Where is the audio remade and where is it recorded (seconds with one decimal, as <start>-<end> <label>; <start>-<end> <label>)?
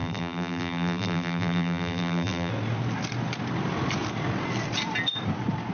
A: 0.0-2.5 remade; 2.5-5.7 recorded